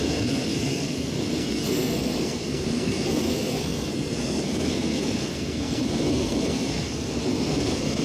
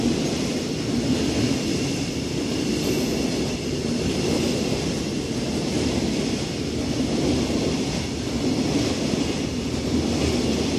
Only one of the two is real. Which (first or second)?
second